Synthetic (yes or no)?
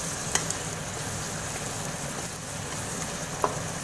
no